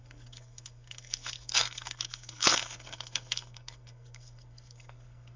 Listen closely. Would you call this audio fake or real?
fake